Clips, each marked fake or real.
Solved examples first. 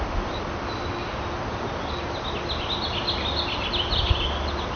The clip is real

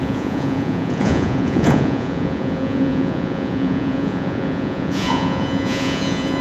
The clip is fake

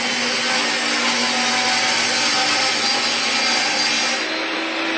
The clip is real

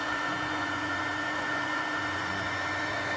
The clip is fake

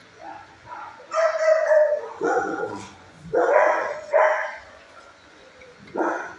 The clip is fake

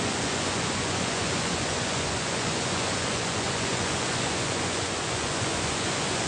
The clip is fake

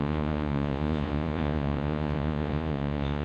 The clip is fake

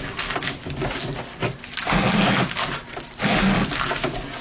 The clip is real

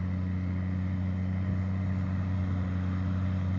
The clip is real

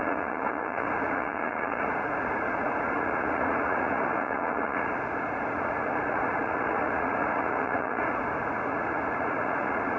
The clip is fake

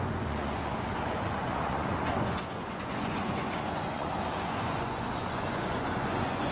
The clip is fake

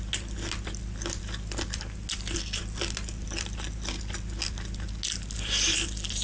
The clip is real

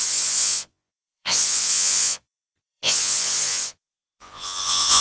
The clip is fake